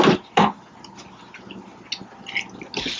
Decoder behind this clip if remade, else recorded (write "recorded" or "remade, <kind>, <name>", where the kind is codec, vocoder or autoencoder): recorded